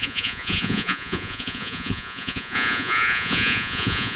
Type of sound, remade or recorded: remade